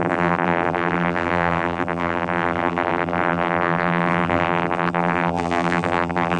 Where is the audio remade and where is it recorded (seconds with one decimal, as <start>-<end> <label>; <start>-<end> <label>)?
0.0-6.4 remade